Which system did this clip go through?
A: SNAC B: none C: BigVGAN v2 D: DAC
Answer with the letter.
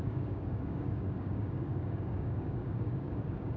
D